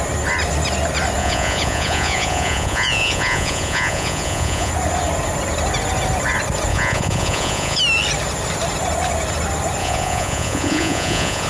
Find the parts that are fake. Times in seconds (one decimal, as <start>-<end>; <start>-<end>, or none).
1.2-4.7; 6.7-7.8; 9.8-11.5